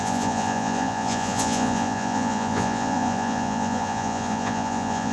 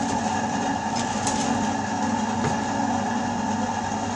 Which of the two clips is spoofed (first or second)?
first